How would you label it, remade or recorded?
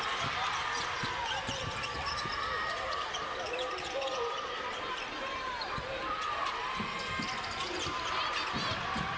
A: remade